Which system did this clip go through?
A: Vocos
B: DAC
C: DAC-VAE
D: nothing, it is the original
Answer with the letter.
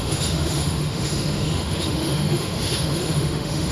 C